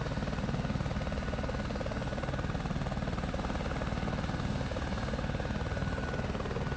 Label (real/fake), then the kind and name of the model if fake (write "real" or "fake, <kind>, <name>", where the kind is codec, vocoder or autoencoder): real